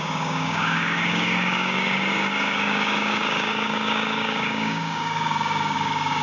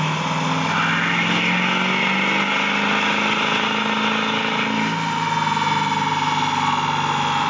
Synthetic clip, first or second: first